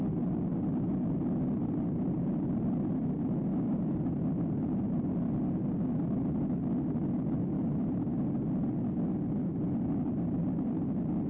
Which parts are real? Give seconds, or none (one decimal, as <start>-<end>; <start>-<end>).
0.0-11.3